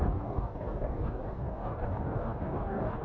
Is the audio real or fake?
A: fake